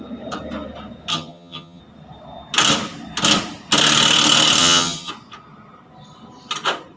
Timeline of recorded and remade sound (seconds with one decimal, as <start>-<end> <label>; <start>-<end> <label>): 0.0-1.1 recorded; 1.1-1.8 remade; 1.8-4.6 recorded; 4.6-5.1 remade; 5.1-7.0 recorded